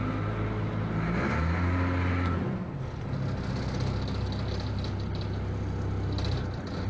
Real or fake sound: real